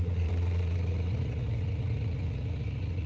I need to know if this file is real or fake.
fake